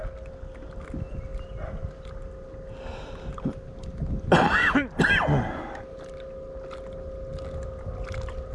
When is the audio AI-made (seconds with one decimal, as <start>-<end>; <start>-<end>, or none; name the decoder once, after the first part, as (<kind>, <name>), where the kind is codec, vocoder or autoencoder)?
none